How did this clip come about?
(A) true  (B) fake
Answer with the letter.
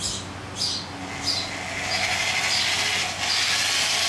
A